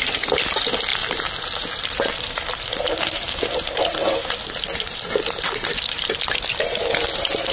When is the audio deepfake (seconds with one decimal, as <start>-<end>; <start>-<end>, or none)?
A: none